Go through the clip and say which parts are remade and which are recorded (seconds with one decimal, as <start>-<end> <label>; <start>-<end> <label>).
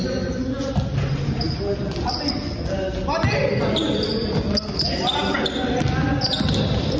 0.0-7.0 recorded